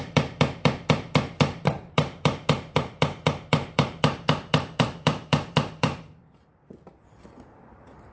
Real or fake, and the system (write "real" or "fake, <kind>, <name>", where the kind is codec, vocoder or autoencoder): fake, vocoder, BigVGAN v2